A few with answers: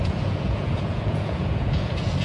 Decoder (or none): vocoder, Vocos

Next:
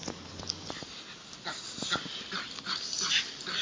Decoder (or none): none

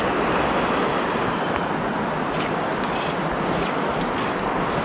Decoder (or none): none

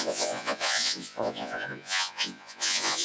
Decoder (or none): vocoder, Vocos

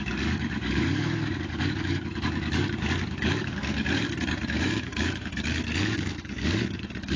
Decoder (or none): codec, DAC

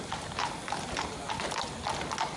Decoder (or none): none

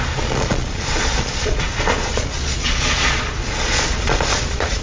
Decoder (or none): vocoder, Vocos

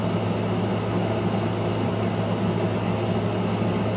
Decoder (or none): none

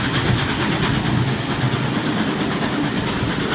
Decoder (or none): none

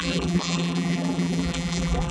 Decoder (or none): vocoder, BigVGAN v2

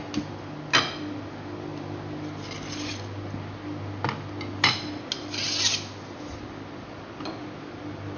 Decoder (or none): none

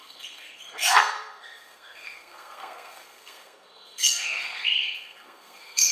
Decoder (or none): codec, SNAC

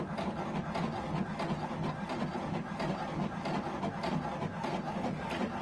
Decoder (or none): none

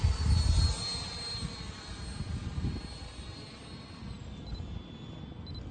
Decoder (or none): none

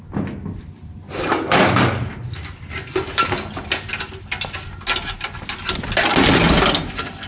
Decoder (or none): none